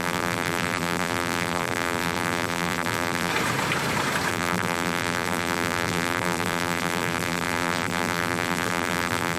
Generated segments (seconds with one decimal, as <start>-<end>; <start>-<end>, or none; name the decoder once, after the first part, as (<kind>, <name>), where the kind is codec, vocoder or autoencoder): 0.0-3.3 (vocoder, BigVGAN v2); 4.3-9.4